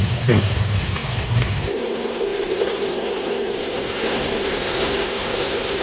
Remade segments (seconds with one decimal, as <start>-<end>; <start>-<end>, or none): 0.0-5.8